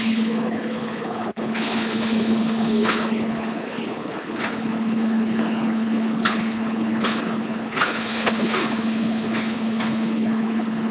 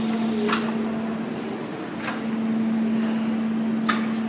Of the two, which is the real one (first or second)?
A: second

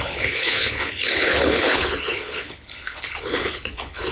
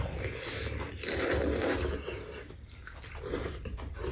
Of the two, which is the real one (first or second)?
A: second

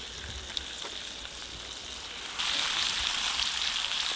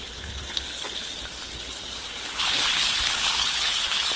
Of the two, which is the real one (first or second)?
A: first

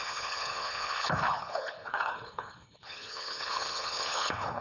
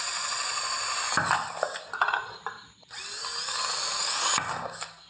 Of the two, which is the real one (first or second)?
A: second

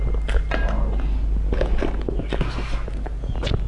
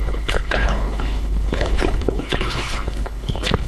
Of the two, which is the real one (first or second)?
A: first